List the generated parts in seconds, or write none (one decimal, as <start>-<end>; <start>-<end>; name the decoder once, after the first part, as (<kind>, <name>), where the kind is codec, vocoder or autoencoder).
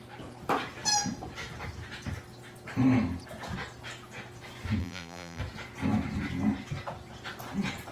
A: 4.8-5.4 (vocoder, BigVGAN v2)